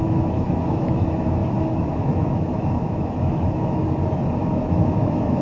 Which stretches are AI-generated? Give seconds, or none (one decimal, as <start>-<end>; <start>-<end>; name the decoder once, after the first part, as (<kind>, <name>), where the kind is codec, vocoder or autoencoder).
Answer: 0.0-3.8 (autoencoder, DAC-VAE); 4.4-5.4